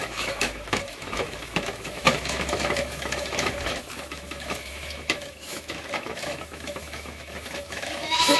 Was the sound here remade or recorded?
remade